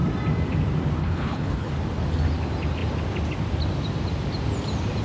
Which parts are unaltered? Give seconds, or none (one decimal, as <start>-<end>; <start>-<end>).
0.0-1.0; 1.7-5.0